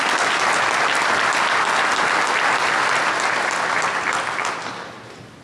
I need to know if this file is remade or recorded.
recorded